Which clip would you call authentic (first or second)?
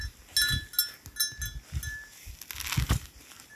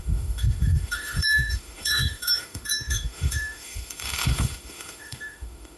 first